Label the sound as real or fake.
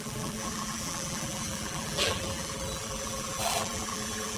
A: fake